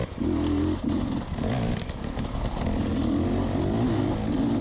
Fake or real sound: real